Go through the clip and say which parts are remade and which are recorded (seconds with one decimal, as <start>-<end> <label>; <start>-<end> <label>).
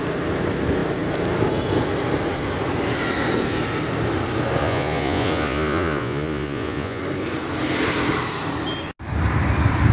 0.0-4.6 recorded; 4.6-7.0 remade; 7.0-9.9 recorded